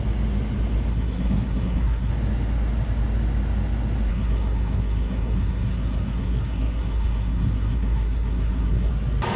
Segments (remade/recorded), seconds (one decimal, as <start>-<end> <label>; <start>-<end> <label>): 0.0-0.9 recorded; 0.9-2.1 remade; 2.1-4.1 recorded; 4.1-8.9 remade; 8.9-9.4 recorded

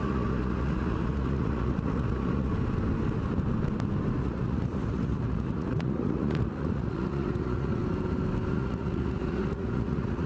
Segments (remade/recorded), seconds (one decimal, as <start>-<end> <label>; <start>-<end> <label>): 0.0-2.5 remade; 2.5-4.2 recorded; 4.2-7.8 remade; 7.8-8.5 recorded; 8.5-10.3 remade

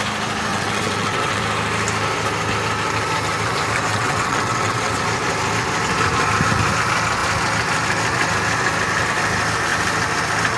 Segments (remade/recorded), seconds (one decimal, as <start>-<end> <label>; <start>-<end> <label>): 0.0-0.5 recorded; 0.5-1.4 remade; 1.4-3.9 recorded; 3.9-5.0 remade; 5.0-10.6 recorded